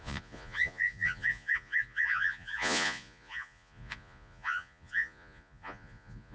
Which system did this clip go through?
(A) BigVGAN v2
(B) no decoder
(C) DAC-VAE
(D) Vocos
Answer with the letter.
D